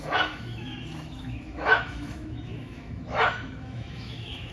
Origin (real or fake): fake